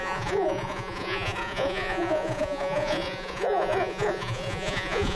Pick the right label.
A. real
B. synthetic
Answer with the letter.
B